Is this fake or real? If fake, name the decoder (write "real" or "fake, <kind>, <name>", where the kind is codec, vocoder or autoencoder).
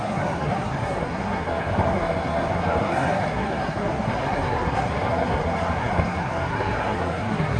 fake, codec, SNAC